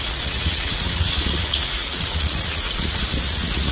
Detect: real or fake fake